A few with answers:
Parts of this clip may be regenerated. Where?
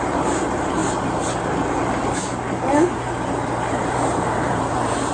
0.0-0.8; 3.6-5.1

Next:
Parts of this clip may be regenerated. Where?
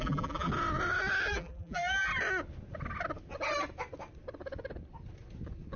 0.0-0.5; 1.3-2.1